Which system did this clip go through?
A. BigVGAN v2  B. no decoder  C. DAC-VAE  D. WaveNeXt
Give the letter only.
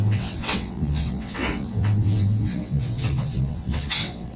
D